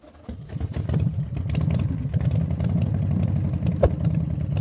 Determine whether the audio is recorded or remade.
recorded